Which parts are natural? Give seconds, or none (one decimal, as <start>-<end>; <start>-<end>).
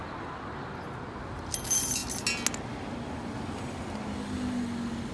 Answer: 0.0-5.1